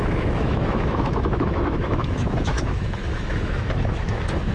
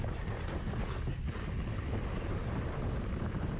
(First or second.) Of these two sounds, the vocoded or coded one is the first